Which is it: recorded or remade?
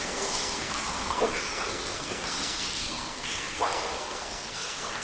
remade